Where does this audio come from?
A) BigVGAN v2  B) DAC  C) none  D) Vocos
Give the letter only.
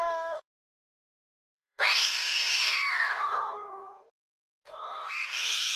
B